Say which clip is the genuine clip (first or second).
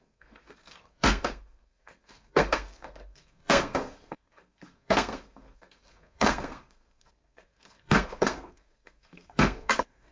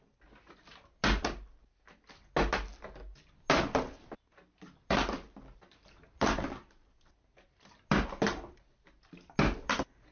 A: second